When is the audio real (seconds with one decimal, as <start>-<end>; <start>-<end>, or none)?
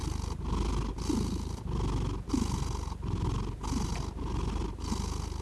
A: 0.0-5.4